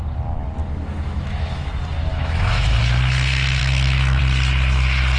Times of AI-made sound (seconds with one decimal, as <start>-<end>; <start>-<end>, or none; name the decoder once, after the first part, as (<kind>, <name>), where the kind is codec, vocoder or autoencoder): 0.6-1.7 (autoencoder, DAC-VAE); 2.1-2.8; 3.6-4.2